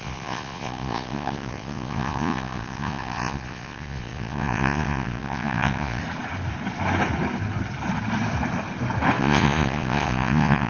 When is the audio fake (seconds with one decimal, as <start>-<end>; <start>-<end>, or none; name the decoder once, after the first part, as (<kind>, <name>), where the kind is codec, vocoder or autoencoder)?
0.0-6.0 (vocoder, Vocos); 9.2-10.7